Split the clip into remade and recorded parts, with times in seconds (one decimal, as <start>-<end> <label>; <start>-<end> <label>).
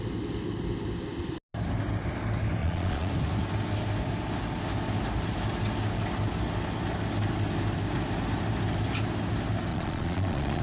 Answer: 0.0-2.6 recorded; 2.6-3.1 remade; 3.1-9.7 recorded; 9.7-10.6 remade